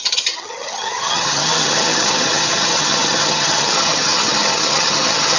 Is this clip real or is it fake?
fake